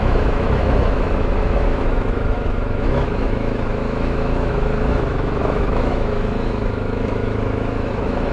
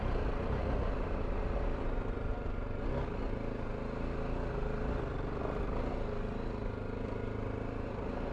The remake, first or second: first